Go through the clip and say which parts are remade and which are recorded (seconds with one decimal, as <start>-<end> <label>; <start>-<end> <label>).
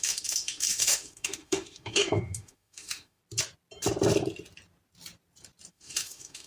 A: 0.0-3.2 remade; 3.2-5.7 recorded; 5.7-6.5 remade